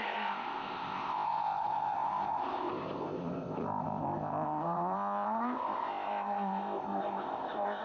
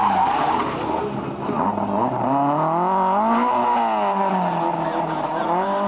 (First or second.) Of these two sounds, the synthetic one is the first